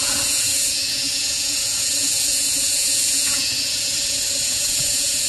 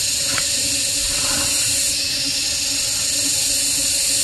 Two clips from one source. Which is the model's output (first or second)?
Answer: first